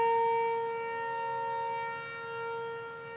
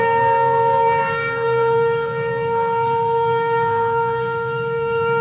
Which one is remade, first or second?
second